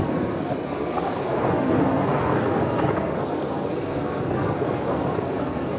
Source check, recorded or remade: remade